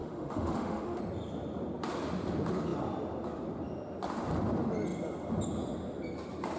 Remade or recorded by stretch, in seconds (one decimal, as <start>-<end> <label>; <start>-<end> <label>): 0.0-1.0 remade; 1.0-6.6 recorded